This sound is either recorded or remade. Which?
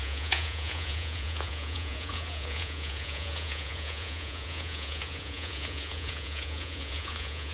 remade